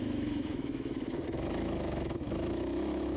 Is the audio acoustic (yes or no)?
no